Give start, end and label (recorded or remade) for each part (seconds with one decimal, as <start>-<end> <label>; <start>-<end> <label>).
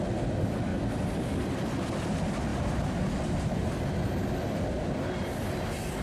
0.0-0.7 recorded; 0.7-1.8 remade; 1.8-6.0 recorded